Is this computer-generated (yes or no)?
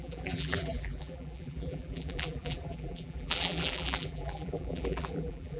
yes